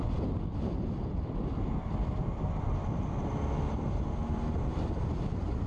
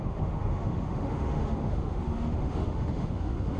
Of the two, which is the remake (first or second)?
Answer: second